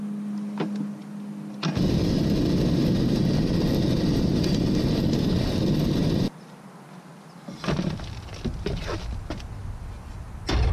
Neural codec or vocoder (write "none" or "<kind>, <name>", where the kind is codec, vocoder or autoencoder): none